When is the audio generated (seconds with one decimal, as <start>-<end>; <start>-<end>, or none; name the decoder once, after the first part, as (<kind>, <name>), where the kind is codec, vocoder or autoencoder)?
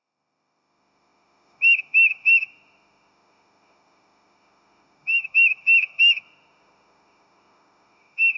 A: 0.0-8.4 (autoencoder, DAC-VAE)